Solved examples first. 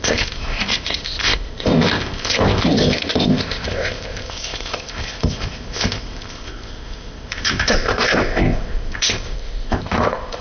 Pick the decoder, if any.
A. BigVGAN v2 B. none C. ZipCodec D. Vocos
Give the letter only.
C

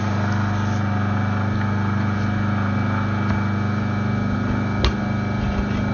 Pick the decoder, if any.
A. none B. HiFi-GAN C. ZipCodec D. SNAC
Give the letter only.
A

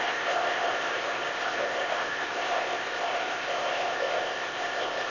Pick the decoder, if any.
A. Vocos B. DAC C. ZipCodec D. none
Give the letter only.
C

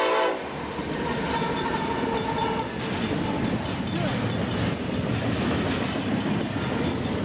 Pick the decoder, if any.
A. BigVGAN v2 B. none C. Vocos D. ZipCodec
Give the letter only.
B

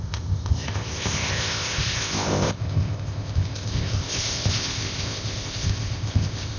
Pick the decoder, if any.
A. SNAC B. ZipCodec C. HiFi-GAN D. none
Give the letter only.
B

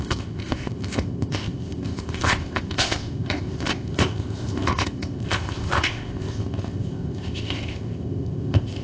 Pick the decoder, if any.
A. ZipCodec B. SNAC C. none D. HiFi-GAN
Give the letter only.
A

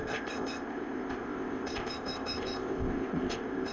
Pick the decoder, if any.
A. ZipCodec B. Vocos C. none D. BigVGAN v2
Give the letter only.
A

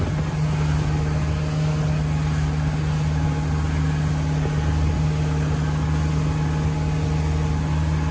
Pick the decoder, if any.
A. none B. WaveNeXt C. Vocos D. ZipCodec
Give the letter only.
A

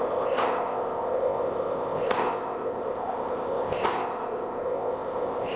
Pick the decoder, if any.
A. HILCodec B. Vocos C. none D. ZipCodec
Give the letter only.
D